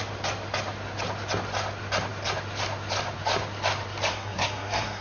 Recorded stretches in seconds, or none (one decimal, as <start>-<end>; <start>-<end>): 0.0-4.1